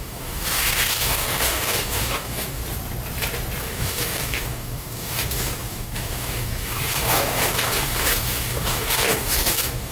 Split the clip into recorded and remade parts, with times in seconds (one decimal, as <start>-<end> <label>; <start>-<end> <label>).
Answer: 0.0-2.6 remade; 2.6-3.6 recorded; 3.6-9.9 remade